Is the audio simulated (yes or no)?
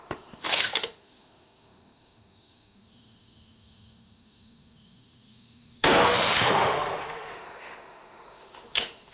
yes